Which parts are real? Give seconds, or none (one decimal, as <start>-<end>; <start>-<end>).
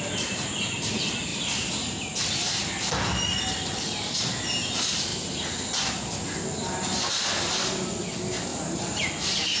0.0-1.3; 2.9-8.5; 9.0-9.6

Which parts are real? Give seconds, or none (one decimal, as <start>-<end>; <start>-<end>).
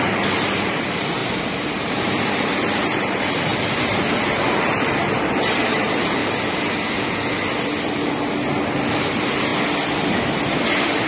1.2-1.8; 6.2-9.0; 9.5-11.1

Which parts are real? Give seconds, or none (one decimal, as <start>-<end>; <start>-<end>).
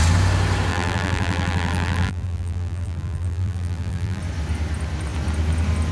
0.0-0.7; 4.2-5.9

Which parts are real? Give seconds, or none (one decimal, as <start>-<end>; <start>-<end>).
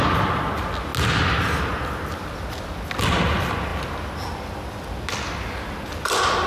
0.0-6.5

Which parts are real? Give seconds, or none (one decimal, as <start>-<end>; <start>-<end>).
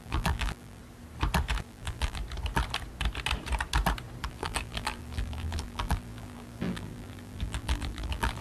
0.8-1.6; 2.2-4.3